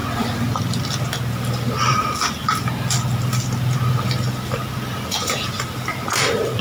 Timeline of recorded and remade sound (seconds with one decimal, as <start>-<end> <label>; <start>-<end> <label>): 0.0-6.6 recorded

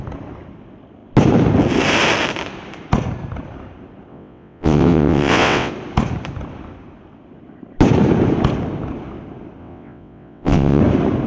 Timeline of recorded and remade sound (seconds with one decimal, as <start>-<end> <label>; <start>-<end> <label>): 0.0-4.1 recorded; 4.1-5.7 remade; 5.7-9.6 recorded; 9.6-10.8 remade; 10.8-11.3 recorded

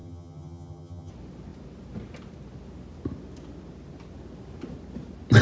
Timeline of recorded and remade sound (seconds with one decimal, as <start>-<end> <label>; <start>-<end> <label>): 0.0-1.1 remade; 1.1-5.4 recorded

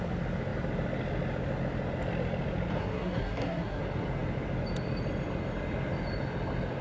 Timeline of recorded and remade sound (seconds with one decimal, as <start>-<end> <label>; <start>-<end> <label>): 0.0-2.8 recorded; 2.8-3.8 remade; 3.8-6.8 recorded

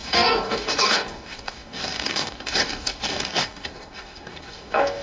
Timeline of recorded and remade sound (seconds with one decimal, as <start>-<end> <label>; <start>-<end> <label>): 0.0-5.0 remade

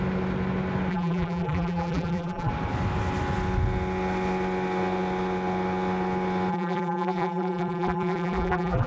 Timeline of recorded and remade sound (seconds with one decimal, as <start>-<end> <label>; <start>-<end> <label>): 0.0-0.9 recorded; 0.9-2.5 remade; 2.5-6.5 recorded; 6.5-8.9 remade

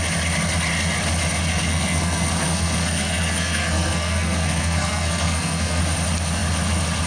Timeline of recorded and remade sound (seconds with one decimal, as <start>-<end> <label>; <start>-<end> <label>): 0.0-1.5 recorded; 1.5-5.8 remade; 5.8-7.1 recorded

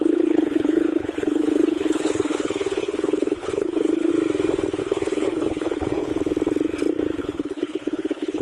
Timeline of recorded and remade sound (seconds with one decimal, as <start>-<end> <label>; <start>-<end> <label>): 0.0-4.1 remade; 4.1-4.8 recorded; 4.8-6.1 remade; 6.1-7.2 recorded; 7.2-8.4 remade